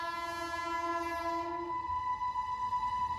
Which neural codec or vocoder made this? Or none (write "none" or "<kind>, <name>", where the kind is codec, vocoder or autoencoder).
none